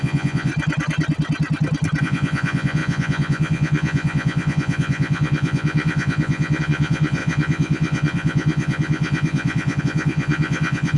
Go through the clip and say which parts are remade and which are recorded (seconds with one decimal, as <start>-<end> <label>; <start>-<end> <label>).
0.0-0.5 remade; 0.5-2.0 recorded; 2.0-11.0 remade